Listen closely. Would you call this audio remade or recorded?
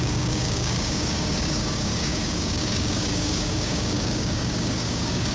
remade